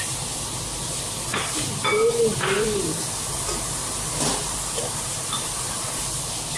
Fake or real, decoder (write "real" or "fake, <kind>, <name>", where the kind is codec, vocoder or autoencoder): real